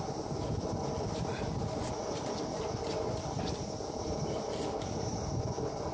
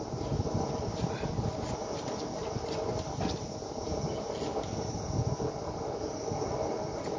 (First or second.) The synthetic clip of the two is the first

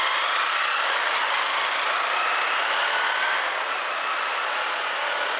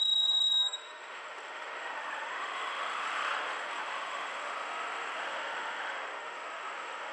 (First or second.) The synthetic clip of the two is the second